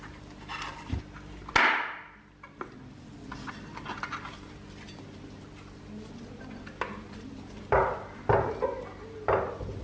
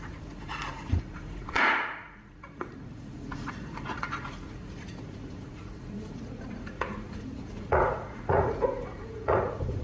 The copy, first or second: second